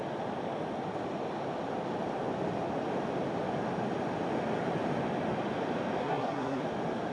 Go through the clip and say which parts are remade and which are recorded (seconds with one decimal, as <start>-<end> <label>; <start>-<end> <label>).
0.0-6.0 recorded; 6.0-6.6 remade; 6.6-7.1 recorded